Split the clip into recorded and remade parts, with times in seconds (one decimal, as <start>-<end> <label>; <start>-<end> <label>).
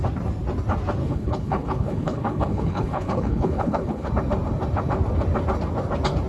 0.0-1.0 recorded; 1.0-4.1 remade; 4.1-6.3 recorded